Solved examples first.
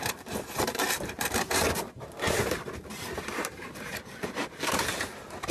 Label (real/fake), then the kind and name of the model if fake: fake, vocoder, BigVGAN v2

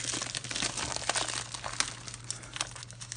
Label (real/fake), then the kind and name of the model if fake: real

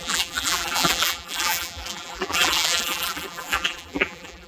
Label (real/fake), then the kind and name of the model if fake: fake, vocoder, BigVGAN v2